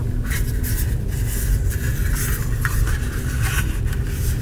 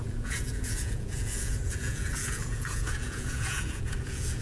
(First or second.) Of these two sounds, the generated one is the second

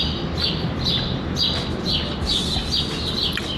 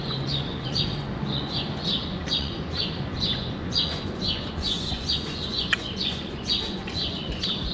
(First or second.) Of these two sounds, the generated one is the second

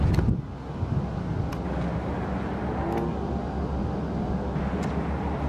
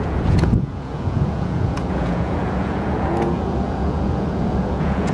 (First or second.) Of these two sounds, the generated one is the second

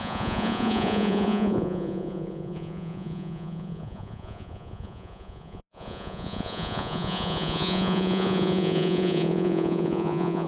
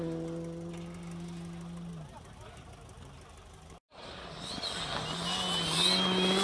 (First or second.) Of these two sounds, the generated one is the first